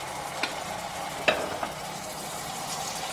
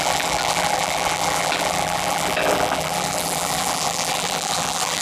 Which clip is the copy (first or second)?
second